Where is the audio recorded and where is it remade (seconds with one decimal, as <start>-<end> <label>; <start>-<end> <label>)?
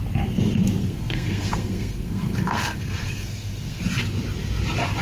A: 0.0-0.8 recorded; 0.8-3.8 remade; 3.8-5.0 recorded